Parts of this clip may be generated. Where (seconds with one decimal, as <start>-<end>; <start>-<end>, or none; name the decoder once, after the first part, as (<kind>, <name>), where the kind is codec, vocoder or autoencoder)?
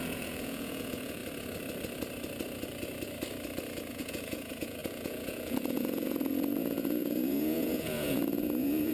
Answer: 0.0-1.2 (vocoder, Vocos); 3.9-8.9